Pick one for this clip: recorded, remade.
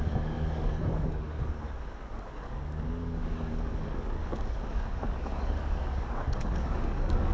remade